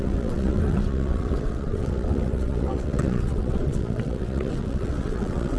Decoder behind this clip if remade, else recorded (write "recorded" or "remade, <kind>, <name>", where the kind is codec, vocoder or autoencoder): remade, vocoder, WaveNeXt